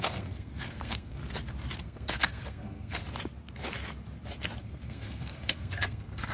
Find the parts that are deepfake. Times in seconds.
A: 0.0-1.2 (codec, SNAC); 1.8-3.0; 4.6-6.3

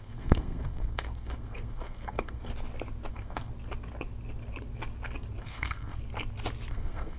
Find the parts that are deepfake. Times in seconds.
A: 0.0-2.5 (codec, SNAC); 3.1-3.5; 5.4-6.0; 6.7-7.2

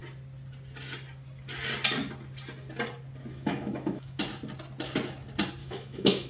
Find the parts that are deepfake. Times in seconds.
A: 3.3-4.2 (autoencoder, DAC-VAE); 5.6-6.3

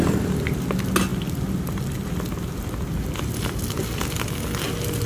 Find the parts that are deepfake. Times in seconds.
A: none

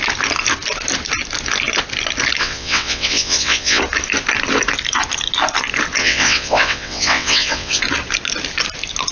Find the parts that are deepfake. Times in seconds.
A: 2.4-3.8 (vocoder, WaveNeXt); 6.0-7.8

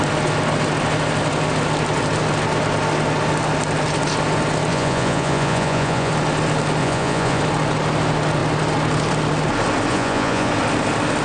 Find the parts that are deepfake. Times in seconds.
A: 4.7-6.1 (vocoder, Vocos); 6.8-7.4; 9.9-10.5

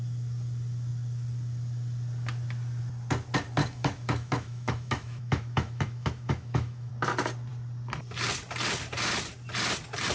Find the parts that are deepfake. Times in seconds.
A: 3.6-6.9 (autoencoder, DAC-VAE)

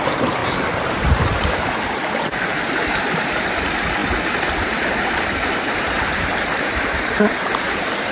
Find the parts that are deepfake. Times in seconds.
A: 0.0-8.1 (vocoder, BigVGAN v2)